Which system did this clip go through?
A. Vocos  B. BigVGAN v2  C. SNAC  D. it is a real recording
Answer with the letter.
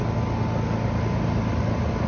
D